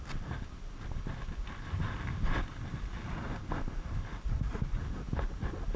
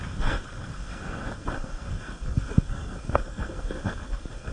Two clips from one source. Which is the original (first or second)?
first